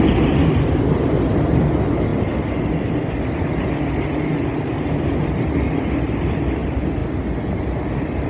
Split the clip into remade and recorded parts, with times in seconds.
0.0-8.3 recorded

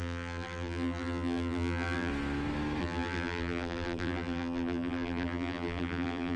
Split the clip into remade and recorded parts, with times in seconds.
0.0-2.1 remade; 2.1-2.8 recorded; 2.8-6.4 remade

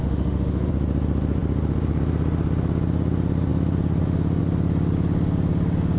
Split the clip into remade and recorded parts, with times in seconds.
0.0-0.7 remade; 0.7-6.0 recorded